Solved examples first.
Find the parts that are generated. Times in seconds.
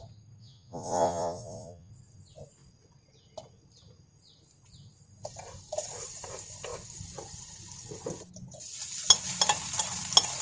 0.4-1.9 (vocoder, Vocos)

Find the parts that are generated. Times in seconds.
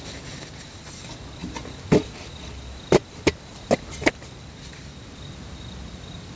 none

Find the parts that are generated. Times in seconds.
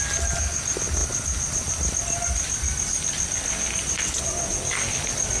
none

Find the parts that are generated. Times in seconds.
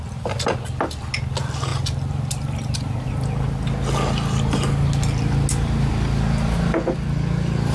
none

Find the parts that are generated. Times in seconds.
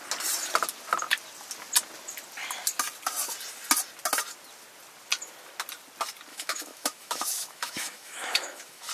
6.3-8.9 (autoencoder, DAC-VAE)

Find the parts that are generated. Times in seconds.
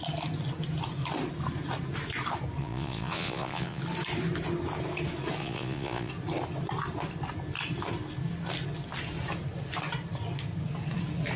2.6-3.8 (vocoder, Vocos); 5.4-6.1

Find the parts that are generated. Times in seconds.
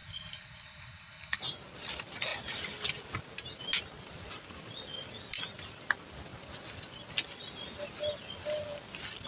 0.0-1.4 (codec, HILCodec)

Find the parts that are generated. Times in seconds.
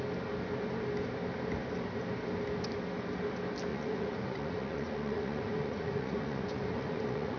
3.7-7.4 (vocoder, Vocos)